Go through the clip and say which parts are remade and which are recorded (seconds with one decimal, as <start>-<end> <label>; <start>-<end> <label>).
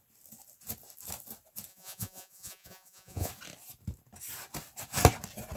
0.0-1.7 recorded; 1.7-3.3 remade; 3.3-5.6 recorded